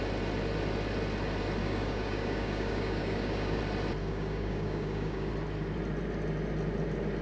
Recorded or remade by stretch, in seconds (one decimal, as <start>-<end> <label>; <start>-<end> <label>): 0.0-1.6 recorded; 1.6-3.6 remade; 3.6-4.0 recorded; 4.0-5.3 remade; 5.3-7.2 recorded